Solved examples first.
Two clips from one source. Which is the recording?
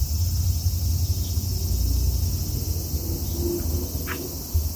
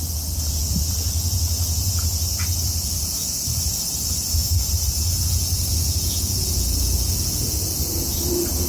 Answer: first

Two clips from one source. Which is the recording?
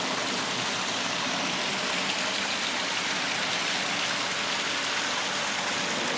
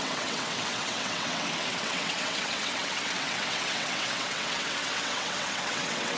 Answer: first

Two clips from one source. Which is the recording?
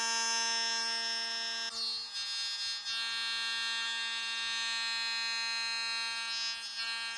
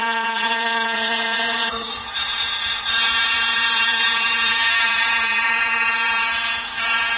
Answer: first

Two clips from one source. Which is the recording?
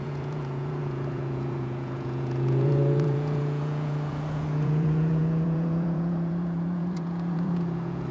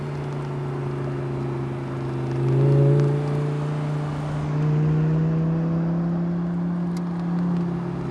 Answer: second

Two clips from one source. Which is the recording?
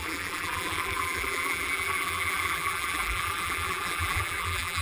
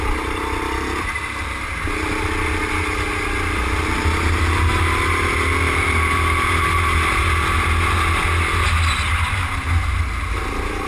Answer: second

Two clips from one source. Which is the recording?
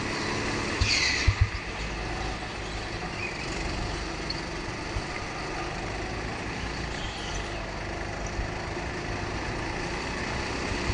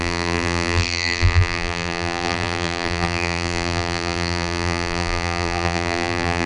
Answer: first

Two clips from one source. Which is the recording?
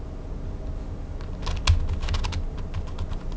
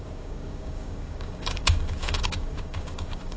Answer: first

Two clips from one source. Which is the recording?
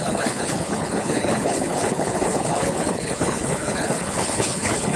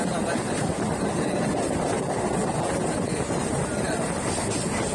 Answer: second